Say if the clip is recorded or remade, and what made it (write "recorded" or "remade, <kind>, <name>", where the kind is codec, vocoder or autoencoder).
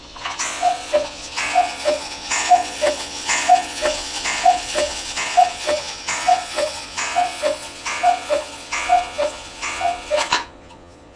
remade, vocoder, Vocos